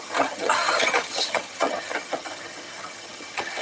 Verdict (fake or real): fake